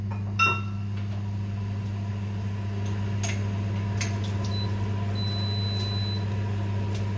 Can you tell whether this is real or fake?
real